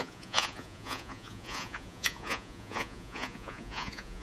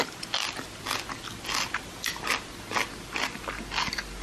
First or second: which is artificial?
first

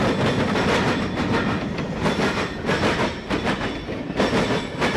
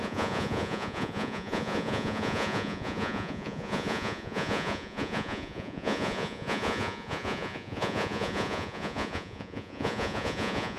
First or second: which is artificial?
second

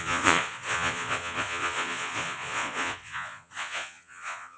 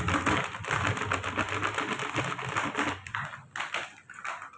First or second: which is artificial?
first